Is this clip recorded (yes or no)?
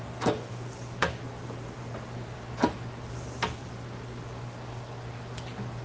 yes